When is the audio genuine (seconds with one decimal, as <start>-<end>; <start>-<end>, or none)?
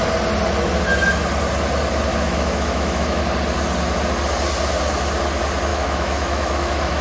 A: 0.0-2.1; 3.2-5.7